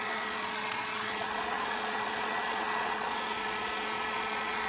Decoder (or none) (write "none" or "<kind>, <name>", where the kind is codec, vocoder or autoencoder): vocoder, Vocos